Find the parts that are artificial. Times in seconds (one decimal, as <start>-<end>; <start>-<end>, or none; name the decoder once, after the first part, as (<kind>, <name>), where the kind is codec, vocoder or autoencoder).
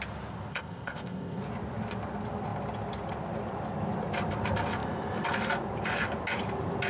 0.5-1.4 (codec, ZipCodec)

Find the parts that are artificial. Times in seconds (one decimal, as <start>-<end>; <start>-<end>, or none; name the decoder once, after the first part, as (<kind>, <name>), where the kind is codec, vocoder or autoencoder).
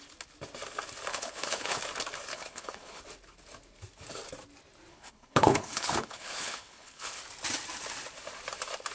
1.1-1.8 (codec, HILCodec); 2.3-3.0; 4.9-7.2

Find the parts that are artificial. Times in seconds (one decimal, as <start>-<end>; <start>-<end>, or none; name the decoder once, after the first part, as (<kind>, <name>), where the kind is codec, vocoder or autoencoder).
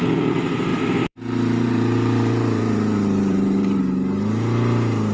0.7-3.8 (vocoder, BigVGAN v2)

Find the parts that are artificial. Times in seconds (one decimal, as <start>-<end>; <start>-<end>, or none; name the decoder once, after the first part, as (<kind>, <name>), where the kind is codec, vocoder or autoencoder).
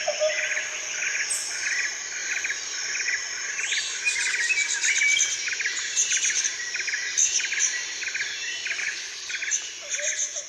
8.8-9.3 (codec, HILCodec)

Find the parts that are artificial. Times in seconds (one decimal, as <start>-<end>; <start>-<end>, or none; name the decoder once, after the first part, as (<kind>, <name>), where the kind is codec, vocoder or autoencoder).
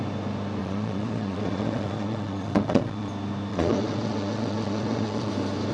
0.6-3.1 (vocoder, Vocos); 3.5-5.3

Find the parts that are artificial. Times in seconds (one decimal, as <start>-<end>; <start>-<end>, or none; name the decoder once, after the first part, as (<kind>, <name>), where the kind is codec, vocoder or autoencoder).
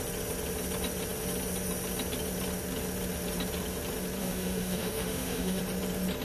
4.2-5.6 (autoencoder, DAC-VAE)